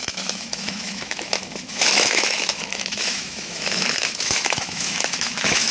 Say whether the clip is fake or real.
fake